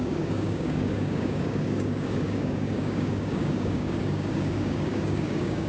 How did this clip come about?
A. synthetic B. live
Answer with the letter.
A